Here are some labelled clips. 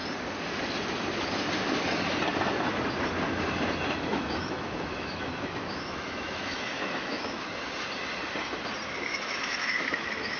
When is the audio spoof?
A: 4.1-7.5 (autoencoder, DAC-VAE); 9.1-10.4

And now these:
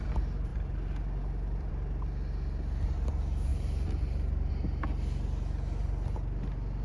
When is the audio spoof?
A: 0.5-1.7 (vocoder, BigVGAN v2); 3.5-4.5